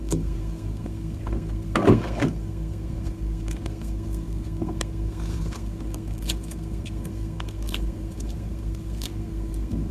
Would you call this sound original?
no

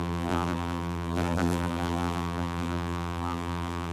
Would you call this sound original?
no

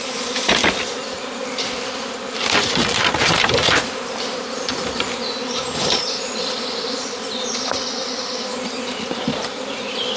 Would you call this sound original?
no